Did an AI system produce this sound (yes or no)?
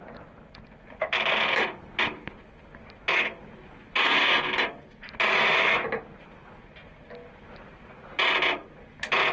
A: no